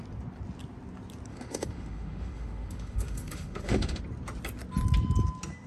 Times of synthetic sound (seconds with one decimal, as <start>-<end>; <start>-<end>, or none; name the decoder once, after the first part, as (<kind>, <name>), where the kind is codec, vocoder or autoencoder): 1.3-4.0 (autoencoder, DAC-VAE)

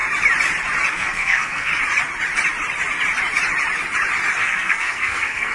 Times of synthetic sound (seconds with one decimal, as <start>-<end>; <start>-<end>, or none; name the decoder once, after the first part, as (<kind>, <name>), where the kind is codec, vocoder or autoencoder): 0.9-1.7 (codec, SNAC); 4.4-5.5